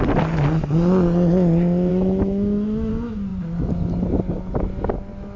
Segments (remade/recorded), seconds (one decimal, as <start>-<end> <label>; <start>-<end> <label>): 0.0-1.9 recorded; 1.9-2.9 remade; 2.9-5.4 recorded

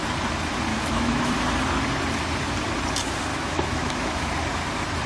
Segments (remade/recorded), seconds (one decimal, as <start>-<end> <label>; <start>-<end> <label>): 0.0-0.7 recorded; 0.7-1.3 remade; 1.3-3.3 recorded; 3.3-4.3 remade; 4.3-5.1 recorded

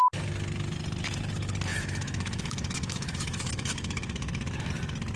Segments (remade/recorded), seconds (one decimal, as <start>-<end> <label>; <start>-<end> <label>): 0.0-1.7 recorded; 1.7-4.7 remade; 4.7-5.2 recorded

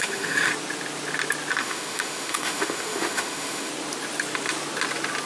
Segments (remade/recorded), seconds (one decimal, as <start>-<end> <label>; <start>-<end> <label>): 0.0-0.5 remade; 0.5-1.6 recorded; 1.6-3.7 remade; 3.7-5.3 recorded

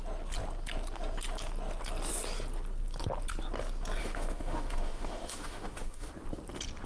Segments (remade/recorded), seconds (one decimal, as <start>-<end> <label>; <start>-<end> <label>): 0.0-4.0 recorded; 4.0-6.1 remade; 6.1-6.9 recorded

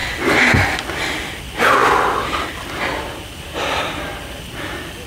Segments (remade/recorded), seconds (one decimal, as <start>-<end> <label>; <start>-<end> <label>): 0.0-5.1 recorded